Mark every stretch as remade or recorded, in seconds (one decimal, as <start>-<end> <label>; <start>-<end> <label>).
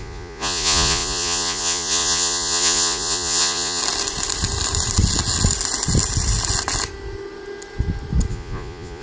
0.0-3.8 remade; 3.8-8.3 recorded; 8.3-9.0 remade